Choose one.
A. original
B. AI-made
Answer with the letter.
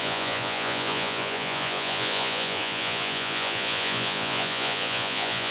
B